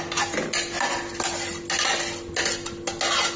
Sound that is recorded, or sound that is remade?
recorded